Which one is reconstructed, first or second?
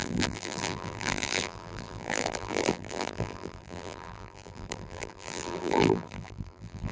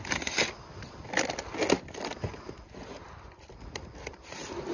first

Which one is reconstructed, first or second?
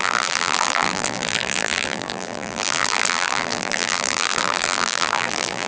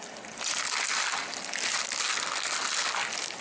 first